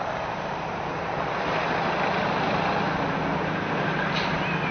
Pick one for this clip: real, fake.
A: real